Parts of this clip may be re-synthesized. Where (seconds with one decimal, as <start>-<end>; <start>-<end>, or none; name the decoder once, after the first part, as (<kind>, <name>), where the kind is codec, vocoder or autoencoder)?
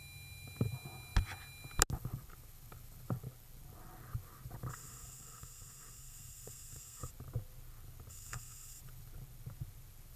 4.7-7.1 (codec, SNAC); 8.1-8.8